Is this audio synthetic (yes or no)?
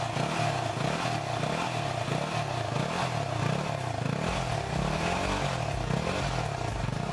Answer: no